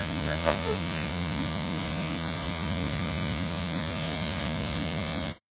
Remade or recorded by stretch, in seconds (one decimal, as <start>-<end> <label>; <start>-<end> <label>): 0.0-5.5 remade